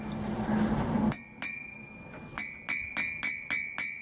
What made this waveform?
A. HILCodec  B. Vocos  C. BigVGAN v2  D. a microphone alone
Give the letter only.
D